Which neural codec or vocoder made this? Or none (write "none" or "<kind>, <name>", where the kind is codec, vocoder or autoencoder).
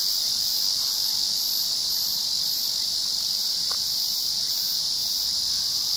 none